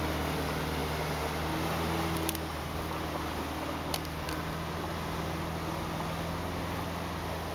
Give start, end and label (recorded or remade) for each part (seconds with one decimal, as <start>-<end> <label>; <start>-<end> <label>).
0.0-7.5 recorded